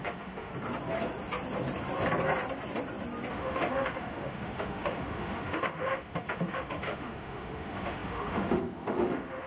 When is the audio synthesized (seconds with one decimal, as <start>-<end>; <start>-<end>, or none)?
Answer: 0.0-0.5; 3.3-9.5